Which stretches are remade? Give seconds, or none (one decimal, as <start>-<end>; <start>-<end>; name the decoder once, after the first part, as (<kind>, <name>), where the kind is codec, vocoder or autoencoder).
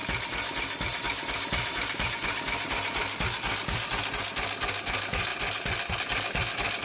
none